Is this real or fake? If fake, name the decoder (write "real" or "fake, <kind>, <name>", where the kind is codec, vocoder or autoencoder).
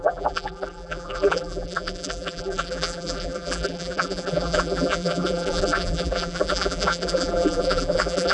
fake, vocoder, BigVGAN v2